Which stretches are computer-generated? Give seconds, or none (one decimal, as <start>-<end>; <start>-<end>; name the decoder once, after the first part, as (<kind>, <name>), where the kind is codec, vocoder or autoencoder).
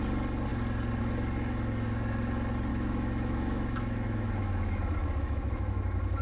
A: 2.7-6.2 (autoencoder, DAC-VAE)